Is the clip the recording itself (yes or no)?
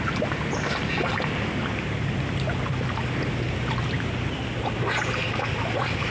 yes